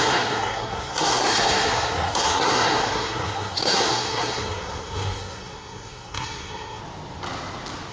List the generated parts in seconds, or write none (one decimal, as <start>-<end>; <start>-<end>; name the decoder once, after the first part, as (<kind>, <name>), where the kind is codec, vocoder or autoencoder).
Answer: 0.0-6.8 (codec, SNAC)